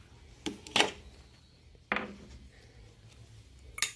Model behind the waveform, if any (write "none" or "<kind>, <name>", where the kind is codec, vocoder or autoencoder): none